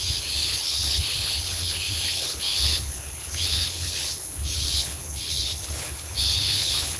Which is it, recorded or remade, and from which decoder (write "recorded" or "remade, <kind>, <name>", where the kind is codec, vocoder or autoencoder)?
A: remade, codec, HILCodec